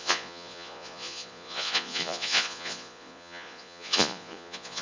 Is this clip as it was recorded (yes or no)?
no